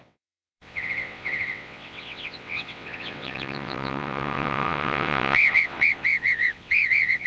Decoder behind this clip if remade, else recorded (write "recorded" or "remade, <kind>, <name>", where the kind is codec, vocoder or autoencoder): remade, vocoder, WaveNeXt